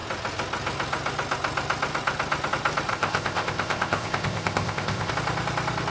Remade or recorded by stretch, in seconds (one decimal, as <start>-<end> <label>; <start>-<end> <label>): 0.0-2.9 recorded; 2.9-5.1 remade; 5.1-5.9 recorded